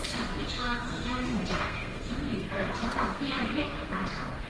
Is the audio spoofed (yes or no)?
yes